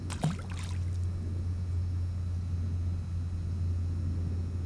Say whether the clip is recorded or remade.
recorded